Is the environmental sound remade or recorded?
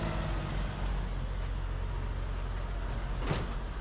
recorded